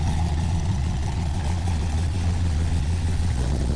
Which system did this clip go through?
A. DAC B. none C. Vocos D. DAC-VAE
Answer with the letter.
C